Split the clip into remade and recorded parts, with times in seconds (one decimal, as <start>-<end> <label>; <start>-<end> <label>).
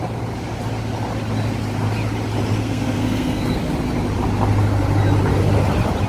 0.0-2.6 recorded; 2.6-3.6 remade; 3.6-6.1 recorded